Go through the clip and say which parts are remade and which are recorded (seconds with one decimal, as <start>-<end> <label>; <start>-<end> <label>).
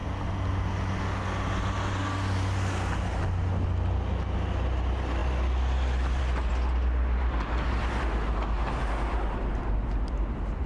0.0-10.7 recorded